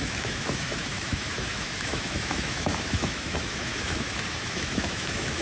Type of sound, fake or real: fake